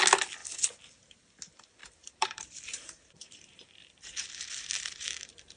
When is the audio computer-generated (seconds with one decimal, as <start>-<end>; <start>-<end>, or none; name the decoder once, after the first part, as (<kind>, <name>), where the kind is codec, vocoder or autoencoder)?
1.8-5.6 (vocoder, BigVGAN v2)